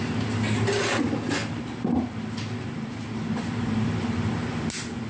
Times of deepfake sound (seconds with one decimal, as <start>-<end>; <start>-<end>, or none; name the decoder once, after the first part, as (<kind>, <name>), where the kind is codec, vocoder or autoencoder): none